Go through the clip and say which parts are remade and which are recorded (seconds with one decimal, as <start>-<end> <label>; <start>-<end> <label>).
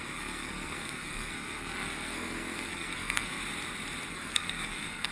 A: 0.0-3.4 remade; 3.4-4.1 recorded; 4.1-5.1 remade